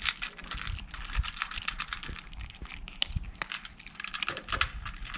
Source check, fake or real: real